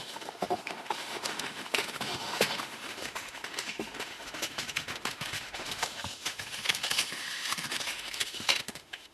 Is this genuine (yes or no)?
no